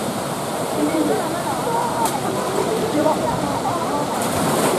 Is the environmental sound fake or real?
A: fake